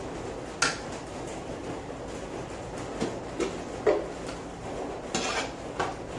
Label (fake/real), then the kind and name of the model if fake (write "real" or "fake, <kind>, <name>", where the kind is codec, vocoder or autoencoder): real